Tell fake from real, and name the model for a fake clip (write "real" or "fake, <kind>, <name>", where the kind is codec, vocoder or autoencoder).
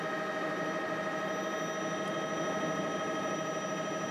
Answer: real